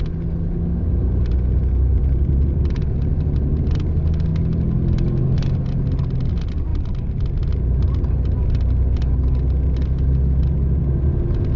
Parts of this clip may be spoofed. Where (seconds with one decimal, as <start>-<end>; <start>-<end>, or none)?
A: 1.9-3.9